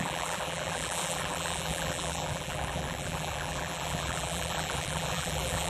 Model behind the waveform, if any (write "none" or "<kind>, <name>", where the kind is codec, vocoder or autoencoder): vocoder, BigVGAN v2